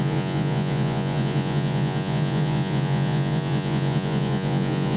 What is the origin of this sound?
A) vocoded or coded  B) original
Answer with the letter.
A